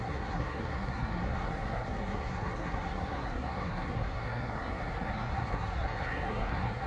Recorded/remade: remade